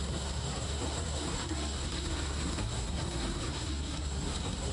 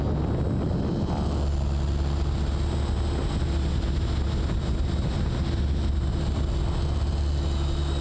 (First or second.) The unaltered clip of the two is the second